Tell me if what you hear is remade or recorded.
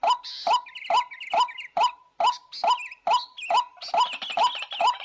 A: recorded